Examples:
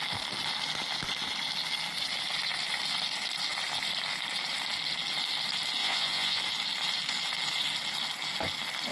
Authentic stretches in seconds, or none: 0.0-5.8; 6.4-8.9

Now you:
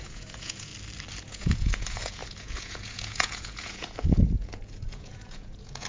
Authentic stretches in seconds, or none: 0.7-1.2

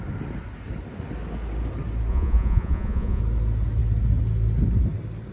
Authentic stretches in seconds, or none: 0.0-2.1; 3.2-5.3

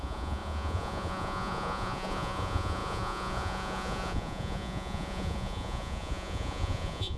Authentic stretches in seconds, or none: none

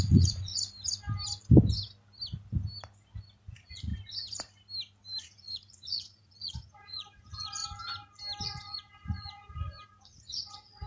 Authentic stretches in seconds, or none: 0.5-3.5; 3.9-5.2; 7.6-8.4

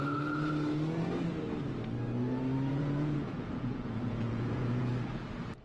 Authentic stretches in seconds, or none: 0.0-2.7; 4.9-5.6

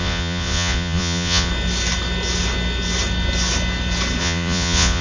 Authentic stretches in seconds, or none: 1.5-4.2

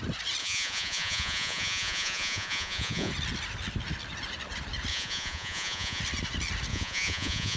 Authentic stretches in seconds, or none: 0.0-0.4; 3.1-4.9; 6.0-6.7